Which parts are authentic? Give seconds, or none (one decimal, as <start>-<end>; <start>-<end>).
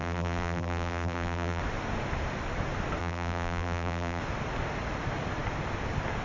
1.6-3.0; 4.2-6.2